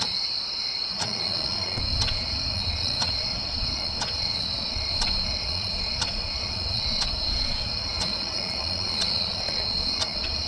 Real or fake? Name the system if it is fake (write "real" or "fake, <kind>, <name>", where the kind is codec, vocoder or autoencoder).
fake, vocoder, Vocos